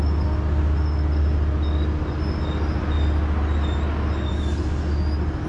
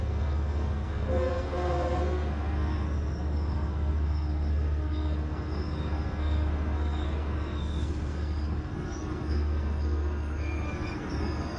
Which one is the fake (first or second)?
second